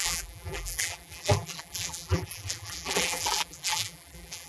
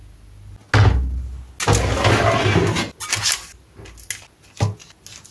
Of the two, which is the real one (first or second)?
second